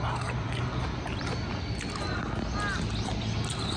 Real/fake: real